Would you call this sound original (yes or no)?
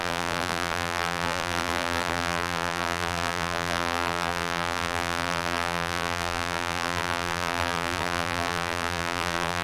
no